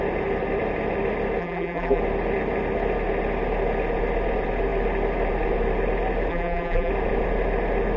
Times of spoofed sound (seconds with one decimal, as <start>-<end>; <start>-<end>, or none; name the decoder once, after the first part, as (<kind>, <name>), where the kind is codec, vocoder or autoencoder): 1.4-2.0 (vocoder, BigVGAN v2); 6.3-6.9

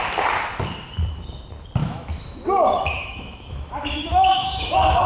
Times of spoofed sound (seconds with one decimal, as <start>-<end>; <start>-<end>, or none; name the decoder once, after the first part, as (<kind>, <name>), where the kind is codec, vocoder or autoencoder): 1.8-5.1 (autoencoder, DAC-VAE)

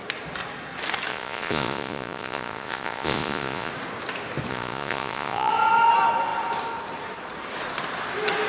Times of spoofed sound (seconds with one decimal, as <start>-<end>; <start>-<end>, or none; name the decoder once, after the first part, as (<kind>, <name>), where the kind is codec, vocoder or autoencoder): 1.1-3.7 (vocoder, Vocos); 4.5-5.5